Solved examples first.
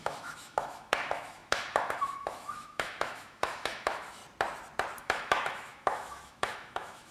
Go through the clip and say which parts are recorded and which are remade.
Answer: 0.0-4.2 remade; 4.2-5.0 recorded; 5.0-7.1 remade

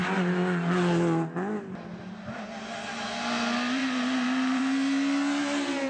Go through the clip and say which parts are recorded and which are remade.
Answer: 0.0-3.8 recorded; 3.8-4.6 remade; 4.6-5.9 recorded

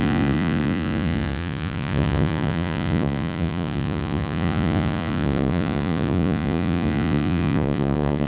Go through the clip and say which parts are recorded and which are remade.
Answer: 0.0-8.3 remade

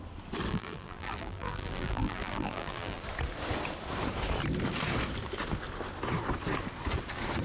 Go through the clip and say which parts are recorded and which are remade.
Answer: 0.0-0.5 recorded; 0.5-3.0 remade; 3.0-7.4 recorded

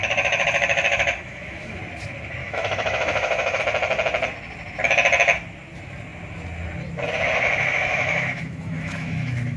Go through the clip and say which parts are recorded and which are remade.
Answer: 0.0-1.8 remade; 1.8-2.4 recorded; 2.4-3.6 remade; 3.6-7.9 recorded; 7.9-9.6 remade

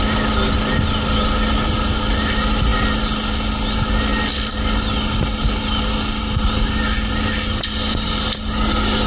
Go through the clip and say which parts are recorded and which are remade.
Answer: 0.0-9.1 recorded

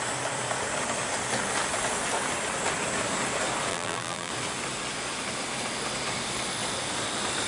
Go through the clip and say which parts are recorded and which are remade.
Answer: 0.0-3.7 recorded; 3.7-4.3 remade; 4.3-7.5 recorded

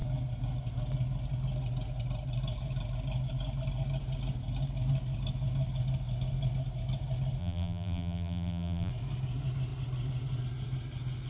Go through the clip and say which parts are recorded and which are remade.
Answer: 0.0-7.4 recorded; 7.4-8.9 remade; 8.9-11.3 recorded